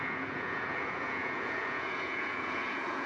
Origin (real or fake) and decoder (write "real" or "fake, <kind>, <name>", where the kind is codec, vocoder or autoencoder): fake, vocoder, Vocos